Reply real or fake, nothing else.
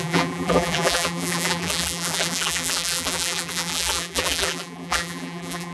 fake